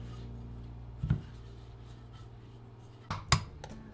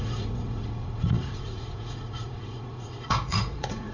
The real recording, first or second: first